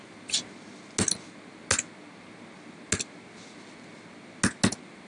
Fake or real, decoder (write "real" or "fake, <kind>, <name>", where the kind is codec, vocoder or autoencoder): real